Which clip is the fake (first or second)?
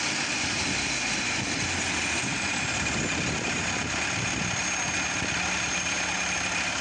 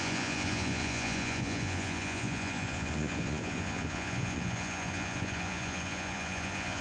second